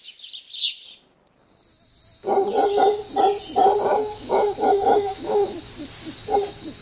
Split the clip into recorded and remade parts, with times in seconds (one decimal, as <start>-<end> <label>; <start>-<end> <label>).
0.0-3.9 recorded; 3.9-5.5 remade; 5.5-6.8 recorded